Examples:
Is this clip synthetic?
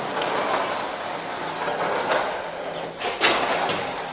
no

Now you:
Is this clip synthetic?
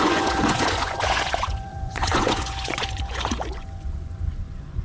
yes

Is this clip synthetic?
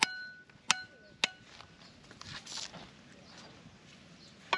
no